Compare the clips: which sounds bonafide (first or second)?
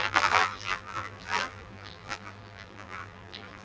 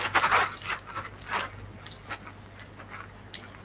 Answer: second